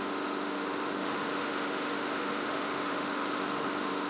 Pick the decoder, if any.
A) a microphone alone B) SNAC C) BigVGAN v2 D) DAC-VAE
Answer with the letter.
D